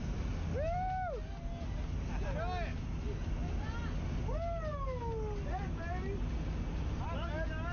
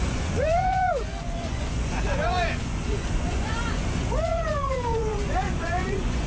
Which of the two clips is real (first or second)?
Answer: first